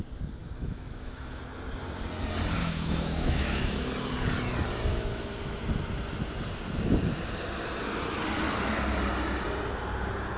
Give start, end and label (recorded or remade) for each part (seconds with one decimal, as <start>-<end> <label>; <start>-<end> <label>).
0.0-0.4 recorded; 0.4-1.4 remade; 1.4-2.6 recorded; 2.6-3.9 remade; 3.9-4.9 recorded; 4.9-5.6 remade; 5.6-10.4 recorded